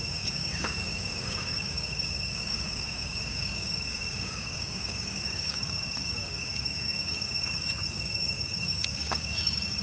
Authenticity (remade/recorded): remade